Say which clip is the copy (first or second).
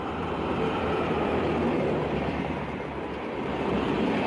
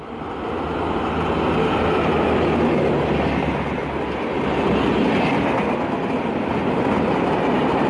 first